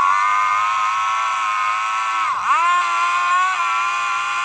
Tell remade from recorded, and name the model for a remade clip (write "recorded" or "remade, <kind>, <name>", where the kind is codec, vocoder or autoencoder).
recorded